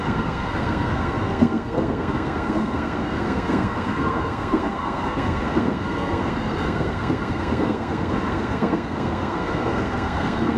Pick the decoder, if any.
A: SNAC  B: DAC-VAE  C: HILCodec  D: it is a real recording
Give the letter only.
A